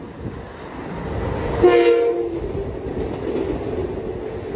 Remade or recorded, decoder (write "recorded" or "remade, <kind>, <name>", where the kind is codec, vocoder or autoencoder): recorded